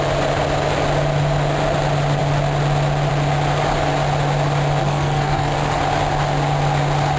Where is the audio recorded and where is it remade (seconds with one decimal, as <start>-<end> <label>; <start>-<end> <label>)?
0.0-4.8 recorded; 4.8-5.8 remade; 5.8-7.2 recorded